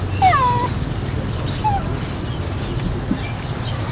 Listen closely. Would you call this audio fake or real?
real